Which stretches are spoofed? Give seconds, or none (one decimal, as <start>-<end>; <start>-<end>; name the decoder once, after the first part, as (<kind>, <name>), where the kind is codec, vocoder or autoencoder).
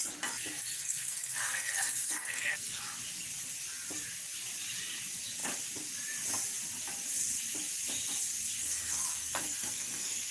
0.7-2.8 (codec, SNAC); 8.6-10.3